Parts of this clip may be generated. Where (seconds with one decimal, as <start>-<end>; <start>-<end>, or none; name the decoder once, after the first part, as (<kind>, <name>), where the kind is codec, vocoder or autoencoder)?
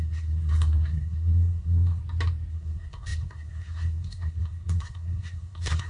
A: 0.0-2.0 (codec, SNAC); 2.5-5.9